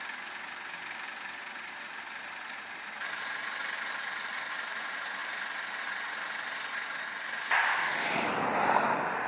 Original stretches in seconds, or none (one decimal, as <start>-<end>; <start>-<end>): 0.0-9.3

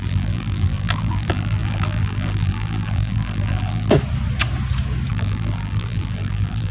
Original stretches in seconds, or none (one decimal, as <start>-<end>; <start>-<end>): 3.9-5.1

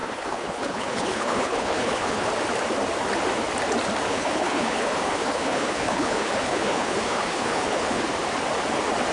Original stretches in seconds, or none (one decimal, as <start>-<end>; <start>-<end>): 2.3-4.1; 8.0-9.1

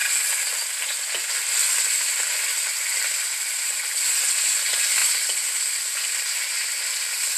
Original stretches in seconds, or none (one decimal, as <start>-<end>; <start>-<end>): 0.0-7.4

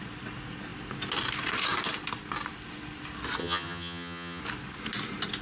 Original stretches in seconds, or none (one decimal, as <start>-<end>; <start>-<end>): 0.0-3.4; 4.4-5.4

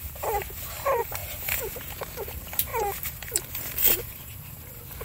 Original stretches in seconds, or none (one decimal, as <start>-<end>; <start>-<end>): 0.0-1.2; 2.0-5.0